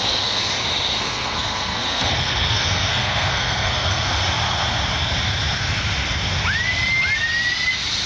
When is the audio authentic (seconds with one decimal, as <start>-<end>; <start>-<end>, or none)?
0.4-1.0; 4.2-8.1